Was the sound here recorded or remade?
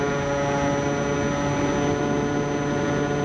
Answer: recorded